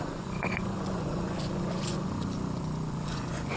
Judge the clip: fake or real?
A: fake